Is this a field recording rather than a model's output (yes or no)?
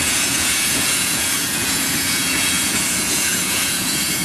no